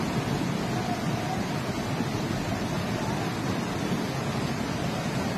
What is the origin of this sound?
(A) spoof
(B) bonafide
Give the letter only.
B